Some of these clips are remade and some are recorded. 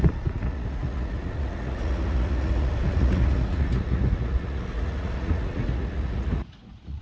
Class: remade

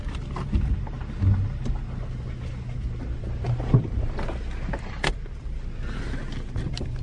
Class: recorded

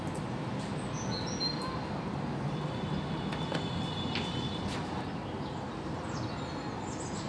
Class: recorded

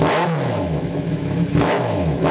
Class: remade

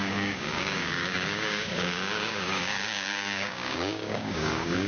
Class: remade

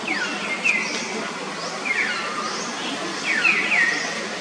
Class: recorded